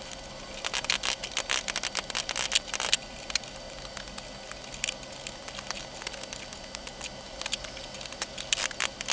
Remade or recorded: recorded